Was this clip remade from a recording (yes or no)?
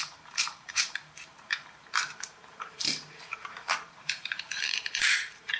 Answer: yes